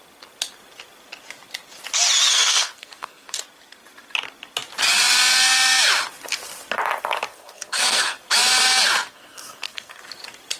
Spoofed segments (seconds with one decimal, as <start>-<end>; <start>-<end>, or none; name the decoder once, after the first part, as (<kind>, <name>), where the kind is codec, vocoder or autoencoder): 2.3-3.4 (codec, SNAC); 7.3-8.2; 9.1-10.0